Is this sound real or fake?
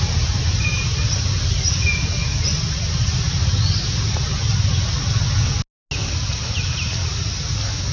real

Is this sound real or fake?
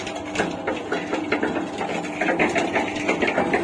real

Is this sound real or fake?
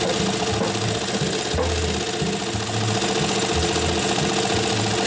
real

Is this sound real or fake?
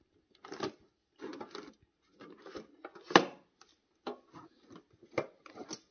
real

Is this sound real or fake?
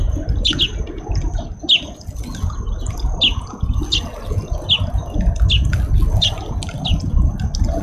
real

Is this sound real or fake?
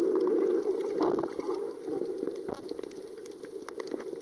real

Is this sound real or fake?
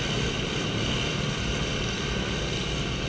real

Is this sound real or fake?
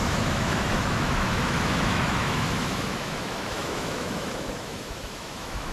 fake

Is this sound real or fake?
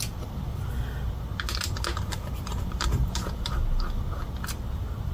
real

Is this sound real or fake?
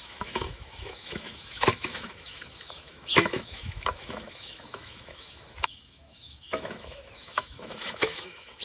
fake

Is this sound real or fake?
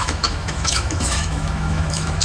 fake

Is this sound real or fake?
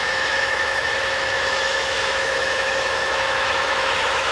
fake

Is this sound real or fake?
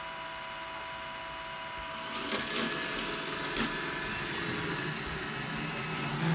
real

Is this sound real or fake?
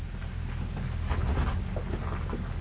real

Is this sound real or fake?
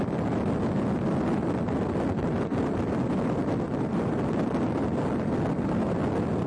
real